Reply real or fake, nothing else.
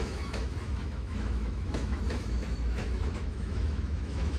fake